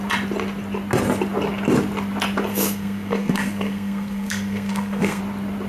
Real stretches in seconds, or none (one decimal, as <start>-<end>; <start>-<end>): 0.0-2.5; 5.2-5.7